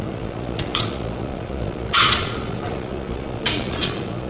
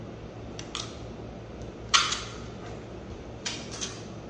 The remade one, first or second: first